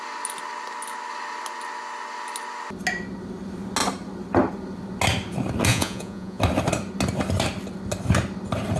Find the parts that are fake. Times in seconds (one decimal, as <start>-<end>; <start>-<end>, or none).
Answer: 5.7-6.4